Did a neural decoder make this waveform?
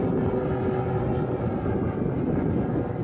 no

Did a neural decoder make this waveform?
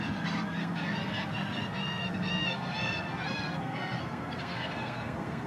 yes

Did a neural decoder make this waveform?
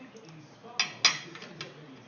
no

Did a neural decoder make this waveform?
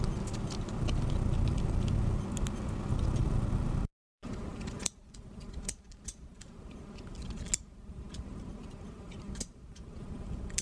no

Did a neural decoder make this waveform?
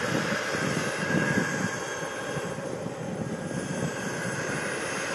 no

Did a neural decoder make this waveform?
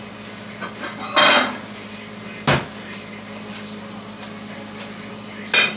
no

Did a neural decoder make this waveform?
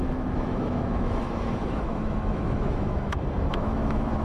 yes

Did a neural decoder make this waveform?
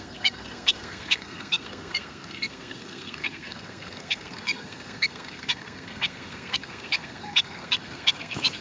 yes